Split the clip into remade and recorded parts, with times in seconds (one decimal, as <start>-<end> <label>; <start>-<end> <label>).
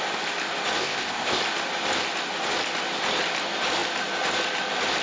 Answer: 0.0-0.8 recorded; 0.8-1.4 remade; 1.4-5.0 recorded